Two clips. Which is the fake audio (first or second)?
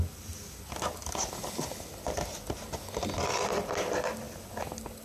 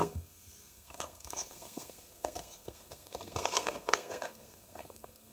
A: second